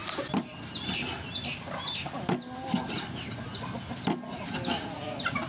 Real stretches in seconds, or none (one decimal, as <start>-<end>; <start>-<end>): 0.0-5.5